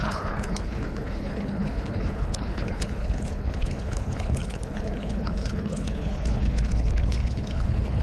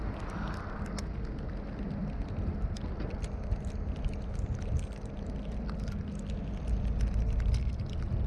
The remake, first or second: first